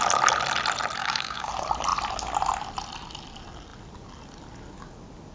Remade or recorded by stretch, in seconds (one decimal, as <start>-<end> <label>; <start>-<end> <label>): 0.0-1.0 recorded; 1.0-1.5 remade; 1.5-5.3 recorded